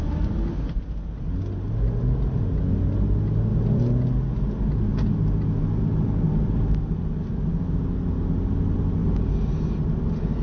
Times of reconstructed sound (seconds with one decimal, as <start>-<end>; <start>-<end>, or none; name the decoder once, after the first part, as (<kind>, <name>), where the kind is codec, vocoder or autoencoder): none